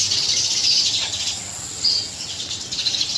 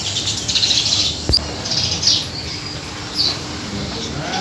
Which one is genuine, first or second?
second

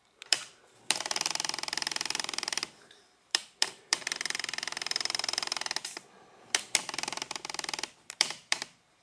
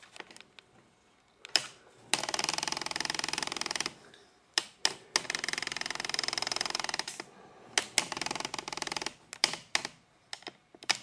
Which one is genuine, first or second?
second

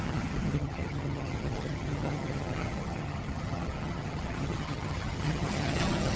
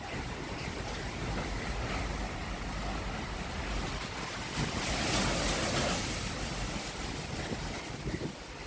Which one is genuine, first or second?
second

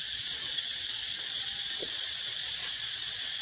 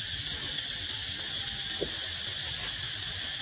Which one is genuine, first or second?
second